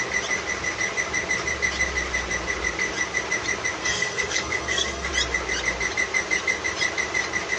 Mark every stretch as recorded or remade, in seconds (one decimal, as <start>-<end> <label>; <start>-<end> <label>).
0.0-3.8 recorded; 3.8-5.1 remade; 5.1-7.6 recorded